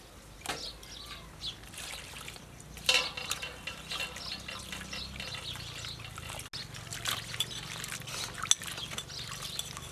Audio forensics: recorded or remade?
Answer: recorded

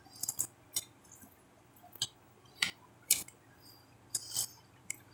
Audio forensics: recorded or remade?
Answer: remade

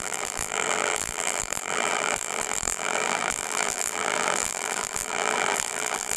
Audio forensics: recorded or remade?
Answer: remade